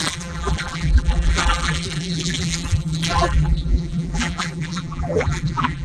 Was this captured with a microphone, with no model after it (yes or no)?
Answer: no